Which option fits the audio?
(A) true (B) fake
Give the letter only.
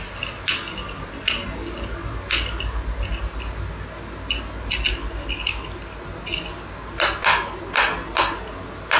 A